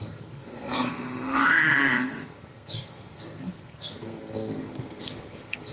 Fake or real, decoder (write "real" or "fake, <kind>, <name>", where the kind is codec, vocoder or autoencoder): fake, codec, SNAC